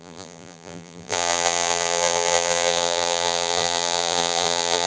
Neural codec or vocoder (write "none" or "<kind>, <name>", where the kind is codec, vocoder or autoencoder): vocoder, BigVGAN v2